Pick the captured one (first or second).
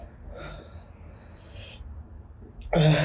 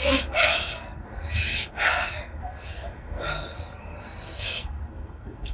first